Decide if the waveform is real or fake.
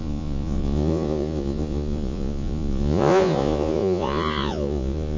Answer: fake